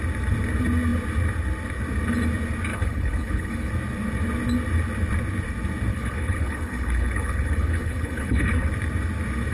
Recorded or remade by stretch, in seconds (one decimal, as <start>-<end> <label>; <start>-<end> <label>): 0.0-2.7 recorded; 2.7-3.7 remade; 3.7-5.9 recorded; 5.9-8.7 remade; 8.7-9.5 recorded